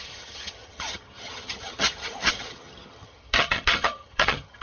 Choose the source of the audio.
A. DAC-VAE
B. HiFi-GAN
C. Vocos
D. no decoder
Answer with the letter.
B